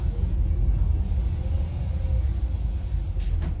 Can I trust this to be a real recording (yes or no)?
yes